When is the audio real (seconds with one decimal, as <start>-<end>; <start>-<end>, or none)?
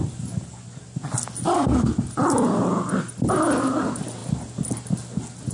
0.0-5.5